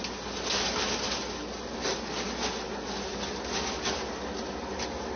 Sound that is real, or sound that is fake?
real